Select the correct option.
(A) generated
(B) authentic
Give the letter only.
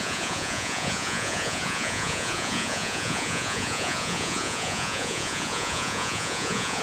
A